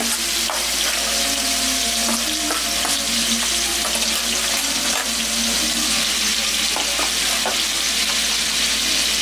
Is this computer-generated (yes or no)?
no